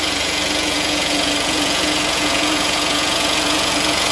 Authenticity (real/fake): fake